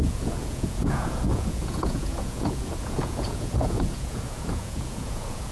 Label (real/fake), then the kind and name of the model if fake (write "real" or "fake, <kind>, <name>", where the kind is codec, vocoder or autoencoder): fake, vocoder, Vocos